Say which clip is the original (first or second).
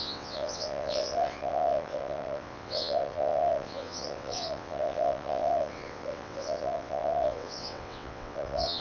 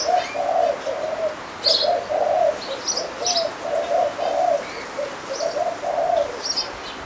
second